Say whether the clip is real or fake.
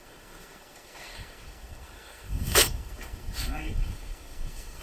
fake